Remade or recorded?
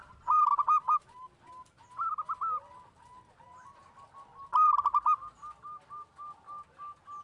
recorded